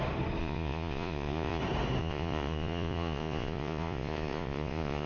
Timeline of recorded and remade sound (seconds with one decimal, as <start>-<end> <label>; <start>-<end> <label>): 0.0-0.4 recorded; 0.4-1.6 remade; 1.6-2.0 recorded; 2.0-5.1 remade